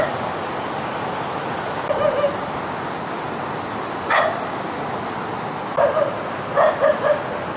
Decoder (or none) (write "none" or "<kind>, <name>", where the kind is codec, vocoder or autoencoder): none